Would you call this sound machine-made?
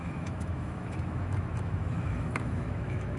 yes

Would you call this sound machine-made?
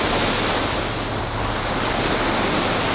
no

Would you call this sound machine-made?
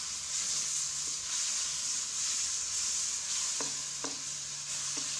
no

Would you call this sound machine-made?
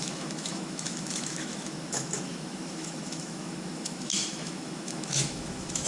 yes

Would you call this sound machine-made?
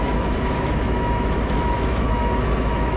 yes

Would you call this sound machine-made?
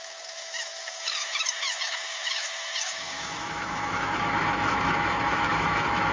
yes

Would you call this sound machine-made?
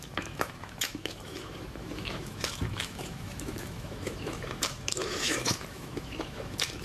yes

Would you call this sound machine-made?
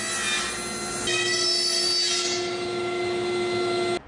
no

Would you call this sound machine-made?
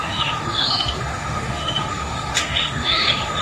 yes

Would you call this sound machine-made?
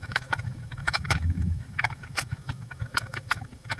yes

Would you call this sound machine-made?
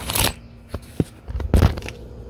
no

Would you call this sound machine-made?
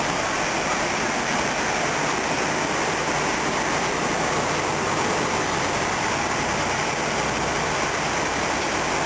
no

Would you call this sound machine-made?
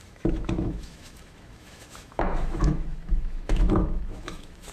yes